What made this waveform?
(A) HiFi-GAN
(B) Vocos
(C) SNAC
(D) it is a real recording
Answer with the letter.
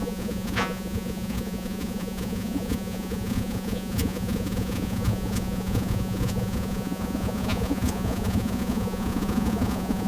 B